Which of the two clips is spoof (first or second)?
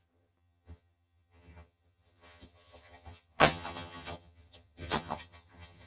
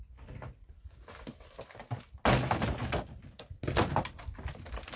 first